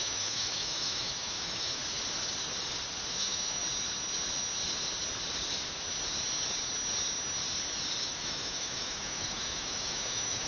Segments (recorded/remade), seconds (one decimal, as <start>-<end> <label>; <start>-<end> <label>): 0.0-1.8 remade; 1.8-3.1 recorded; 3.1-3.6 remade; 3.6-8.0 recorded; 8.0-10.5 remade